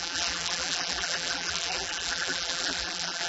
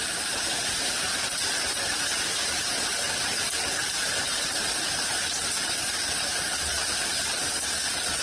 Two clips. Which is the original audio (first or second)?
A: second